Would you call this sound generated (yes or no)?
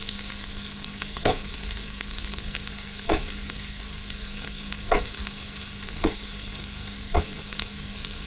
yes